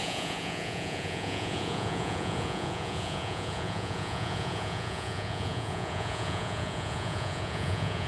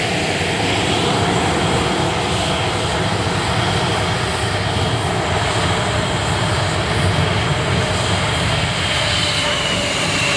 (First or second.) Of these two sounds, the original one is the second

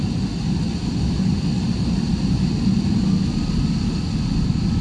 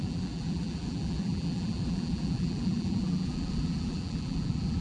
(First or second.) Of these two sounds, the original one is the first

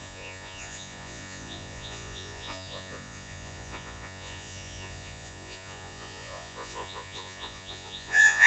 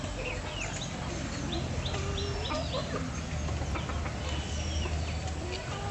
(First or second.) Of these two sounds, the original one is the second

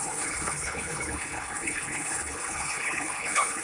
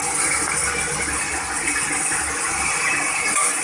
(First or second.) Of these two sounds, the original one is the second